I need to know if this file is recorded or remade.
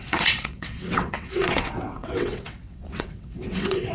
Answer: remade